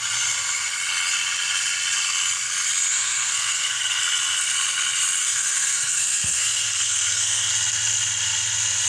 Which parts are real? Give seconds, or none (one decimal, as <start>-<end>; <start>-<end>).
0.0-2.9; 4.0-5.2; 7.5-8.9